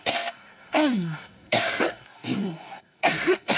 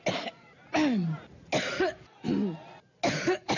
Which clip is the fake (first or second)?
first